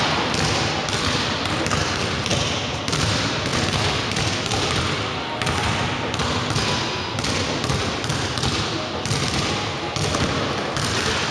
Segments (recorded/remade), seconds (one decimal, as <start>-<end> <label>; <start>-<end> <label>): 0.0-11.3 recorded